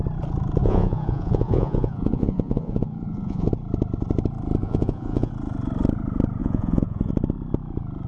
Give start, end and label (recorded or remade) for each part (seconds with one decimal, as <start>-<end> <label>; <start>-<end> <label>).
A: 0.0-0.6 recorded; 0.6-3.5 remade; 3.5-4.6 recorded; 4.6-5.3 remade; 5.3-6.4 recorded; 6.4-7.1 remade; 7.1-8.1 recorded